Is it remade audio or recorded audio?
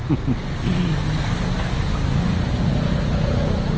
recorded